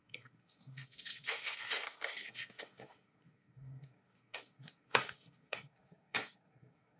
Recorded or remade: remade